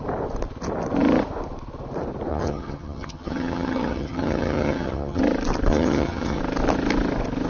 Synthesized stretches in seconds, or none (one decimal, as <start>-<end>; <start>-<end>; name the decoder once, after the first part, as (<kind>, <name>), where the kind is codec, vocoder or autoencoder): 2.3-5.2 (vocoder, HiFi-GAN); 5.7-6.4